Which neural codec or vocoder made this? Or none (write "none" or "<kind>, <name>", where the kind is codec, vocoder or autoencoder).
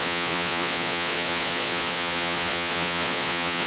vocoder, Vocos